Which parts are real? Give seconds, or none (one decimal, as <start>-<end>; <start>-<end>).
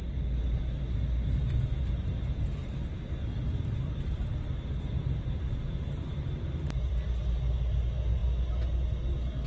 0.0-9.5